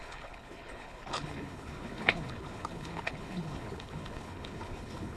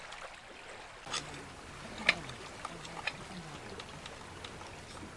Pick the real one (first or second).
second